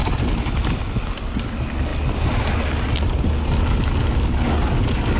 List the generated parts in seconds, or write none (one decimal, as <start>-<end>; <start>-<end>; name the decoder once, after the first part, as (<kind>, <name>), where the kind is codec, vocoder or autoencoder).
none